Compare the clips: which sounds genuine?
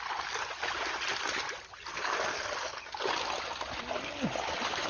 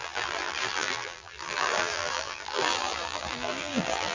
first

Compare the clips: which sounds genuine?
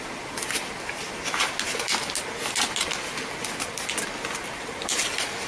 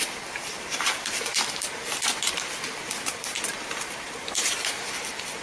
first